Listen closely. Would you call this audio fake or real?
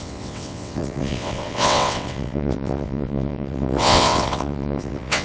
fake